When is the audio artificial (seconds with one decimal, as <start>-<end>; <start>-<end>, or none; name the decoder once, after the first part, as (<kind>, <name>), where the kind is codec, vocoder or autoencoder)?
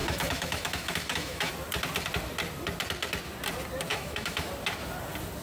0.0-1.5 (autoencoder, DAC-VAE); 3.9-4.5